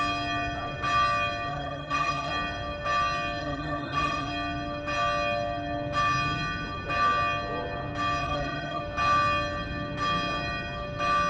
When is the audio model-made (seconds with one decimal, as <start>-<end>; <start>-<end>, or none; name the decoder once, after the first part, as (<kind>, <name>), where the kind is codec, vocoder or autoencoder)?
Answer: 1.5-2.3 (vocoder, HiFi-GAN); 3.4-4.3; 8.2-8.8